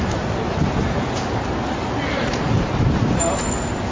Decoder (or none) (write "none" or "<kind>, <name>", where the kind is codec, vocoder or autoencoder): none